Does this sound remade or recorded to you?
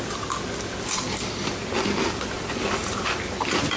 recorded